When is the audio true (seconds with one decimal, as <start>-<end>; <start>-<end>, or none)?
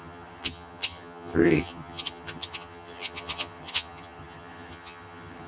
none